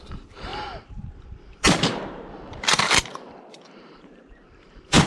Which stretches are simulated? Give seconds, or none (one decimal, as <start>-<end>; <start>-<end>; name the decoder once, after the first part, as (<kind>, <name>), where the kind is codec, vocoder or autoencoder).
0.0-5.1 (vocoder, BigVGAN v2)